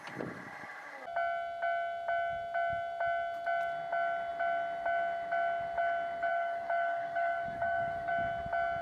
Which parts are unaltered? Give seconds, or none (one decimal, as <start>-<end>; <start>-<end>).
0.0-6.3; 8.1-8.8